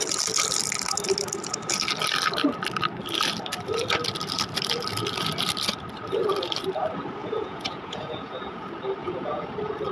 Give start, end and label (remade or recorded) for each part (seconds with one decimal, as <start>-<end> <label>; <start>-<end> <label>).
0.0-7.2 recorded; 7.2-8.6 remade; 8.6-9.0 recorded; 9.0-9.5 remade; 9.5-9.9 recorded